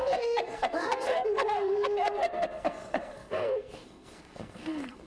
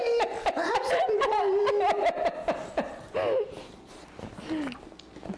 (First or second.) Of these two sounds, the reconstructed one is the first